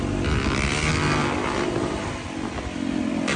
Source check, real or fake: real